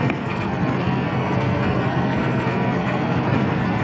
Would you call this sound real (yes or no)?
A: no